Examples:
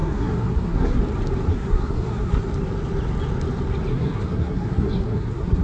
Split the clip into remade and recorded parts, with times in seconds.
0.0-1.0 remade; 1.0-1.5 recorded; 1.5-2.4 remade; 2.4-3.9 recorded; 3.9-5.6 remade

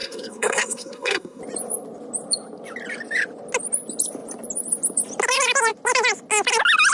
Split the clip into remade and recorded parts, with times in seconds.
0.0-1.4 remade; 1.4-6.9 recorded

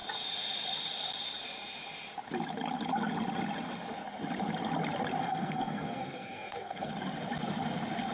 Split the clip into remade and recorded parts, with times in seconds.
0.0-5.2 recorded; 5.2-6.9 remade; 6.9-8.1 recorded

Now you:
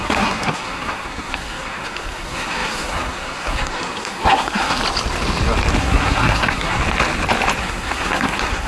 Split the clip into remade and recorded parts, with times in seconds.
0.0-4.8 remade; 4.8-5.8 recorded; 5.8-6.8 remade; 6.8-7.6 recorded; 7.6-8.7 remade